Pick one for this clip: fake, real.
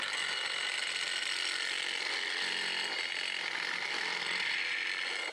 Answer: real